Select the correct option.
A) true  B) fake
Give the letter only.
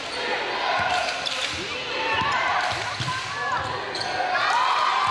A